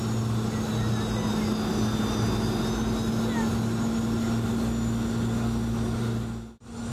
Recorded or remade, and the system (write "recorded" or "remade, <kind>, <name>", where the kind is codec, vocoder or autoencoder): recorded